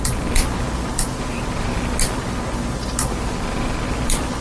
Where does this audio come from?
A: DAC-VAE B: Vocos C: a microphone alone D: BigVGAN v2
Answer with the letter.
C